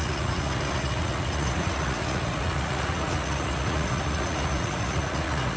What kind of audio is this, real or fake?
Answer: fake